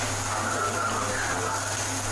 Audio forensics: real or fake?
real